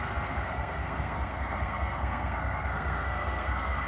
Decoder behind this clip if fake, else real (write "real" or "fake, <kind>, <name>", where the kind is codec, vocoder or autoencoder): fake, codec, SNAC